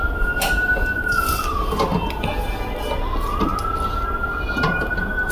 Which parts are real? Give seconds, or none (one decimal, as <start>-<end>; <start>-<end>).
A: 0.0-5.3